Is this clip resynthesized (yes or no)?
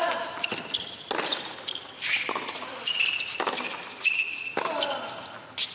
no